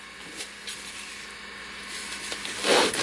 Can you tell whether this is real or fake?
real